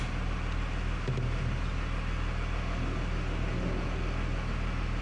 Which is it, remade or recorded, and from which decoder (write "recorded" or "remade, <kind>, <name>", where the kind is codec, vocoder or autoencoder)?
recorded